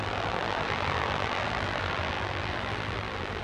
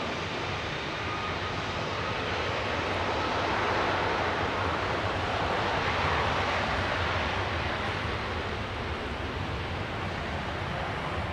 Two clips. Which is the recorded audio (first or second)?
second